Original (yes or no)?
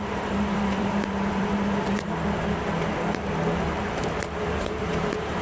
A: no